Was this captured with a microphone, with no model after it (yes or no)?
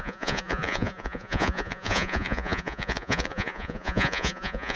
no